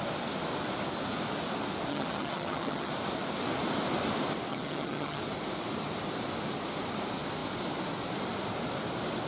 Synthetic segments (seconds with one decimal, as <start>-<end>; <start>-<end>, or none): 1.9-2.9; 4.5-5.2

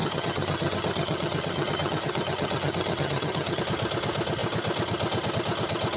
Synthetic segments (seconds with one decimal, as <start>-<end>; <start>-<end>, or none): 0.0-3.6